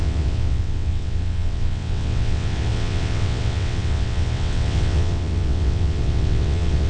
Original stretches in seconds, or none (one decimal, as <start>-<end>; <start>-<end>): none